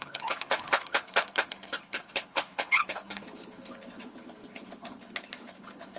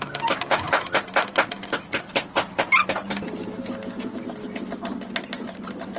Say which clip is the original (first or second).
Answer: second